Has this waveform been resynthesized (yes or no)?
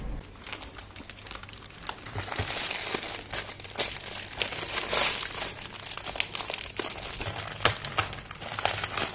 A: no